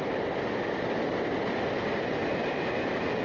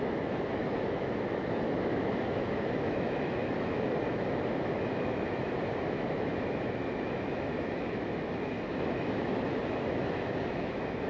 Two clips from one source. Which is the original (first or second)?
first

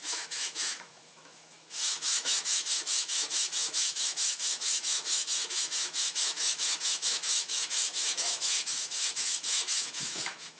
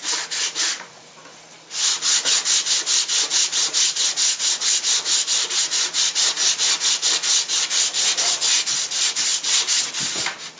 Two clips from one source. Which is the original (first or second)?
second